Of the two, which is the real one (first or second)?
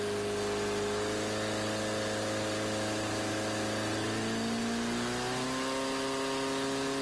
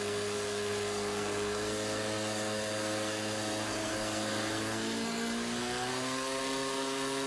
first